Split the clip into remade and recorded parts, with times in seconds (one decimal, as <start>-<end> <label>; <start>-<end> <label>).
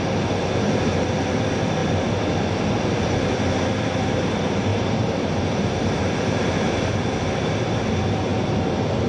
0.0-4.7 recorded; 4.7-6.4 remade; 6.4-9.1 recorded